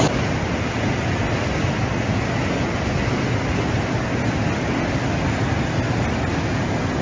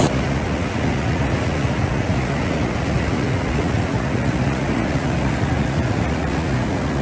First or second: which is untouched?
first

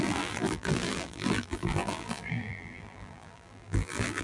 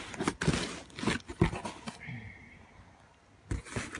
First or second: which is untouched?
second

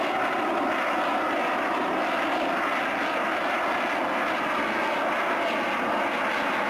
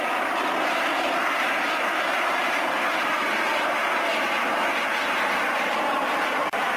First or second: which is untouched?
first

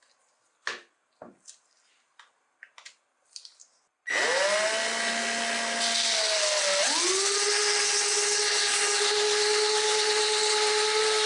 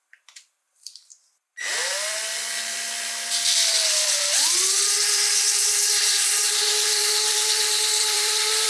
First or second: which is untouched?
first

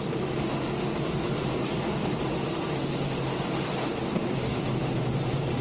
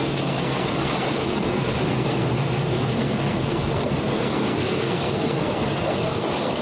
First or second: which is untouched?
first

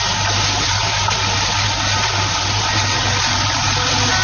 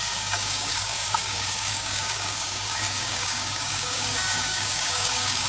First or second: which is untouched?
first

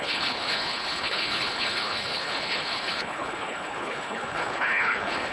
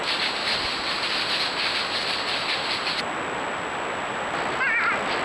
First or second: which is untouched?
second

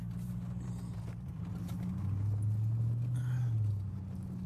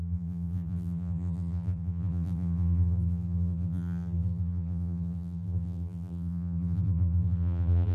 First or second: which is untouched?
first